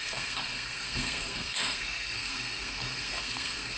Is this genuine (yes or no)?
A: no